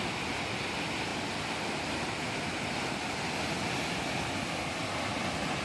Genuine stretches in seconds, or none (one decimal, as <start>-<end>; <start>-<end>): 0.0-5.6